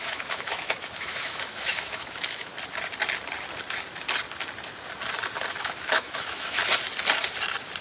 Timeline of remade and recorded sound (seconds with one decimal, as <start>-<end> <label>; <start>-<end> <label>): 0.0-2.5 remade; 2.5-5.5 recorded; 5.5-6.6 remade; 6.6-7.8 recorded

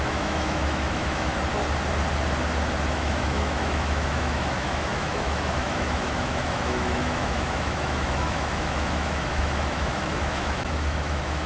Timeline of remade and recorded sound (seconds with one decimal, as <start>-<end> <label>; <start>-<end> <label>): 0.0-1.3 remade; 1.3-2.9 recorded; 2.9-11.5 remade

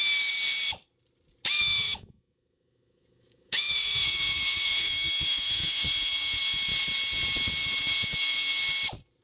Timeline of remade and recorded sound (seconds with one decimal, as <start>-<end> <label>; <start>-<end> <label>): 0.0-1.6 recorded; 1.6-6.4 remade; 6.4-7.6 recorded; 7.6-8.6 remade; 8.6-9.2 recorded

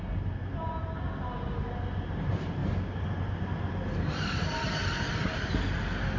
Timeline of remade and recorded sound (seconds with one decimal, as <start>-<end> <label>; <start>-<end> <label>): 0.0-6.2 recorded

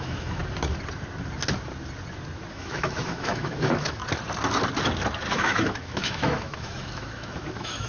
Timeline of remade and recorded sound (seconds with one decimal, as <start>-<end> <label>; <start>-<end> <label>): 0.0-0.4 remade; 0.4-2.5 recorded; 2.5-4.0 remade; 4.0-5.3 recorded; 5.3-7.9 remade

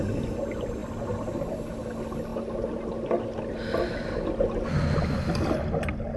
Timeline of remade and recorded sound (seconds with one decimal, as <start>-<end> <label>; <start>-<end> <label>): 0.0-6.2 recorded

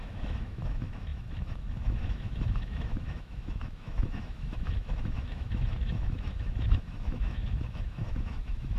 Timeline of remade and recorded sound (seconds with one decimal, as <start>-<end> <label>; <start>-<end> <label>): 0.0-8.8 remade

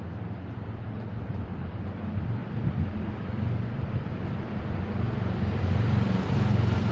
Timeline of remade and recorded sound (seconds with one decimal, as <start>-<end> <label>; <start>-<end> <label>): 0.0-6.9 recorded